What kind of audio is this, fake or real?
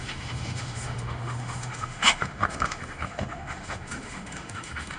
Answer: fake